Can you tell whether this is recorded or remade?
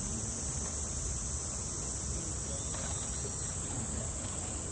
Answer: recorded